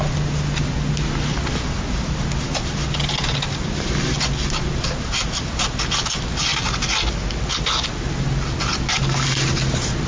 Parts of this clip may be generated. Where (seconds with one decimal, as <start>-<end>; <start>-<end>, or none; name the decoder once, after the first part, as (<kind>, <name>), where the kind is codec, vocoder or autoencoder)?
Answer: none